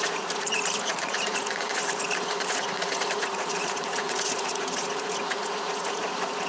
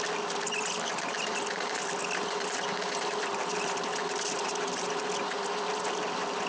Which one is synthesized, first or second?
first